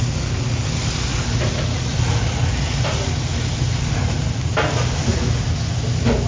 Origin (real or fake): real